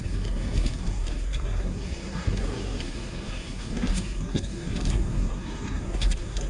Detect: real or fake fake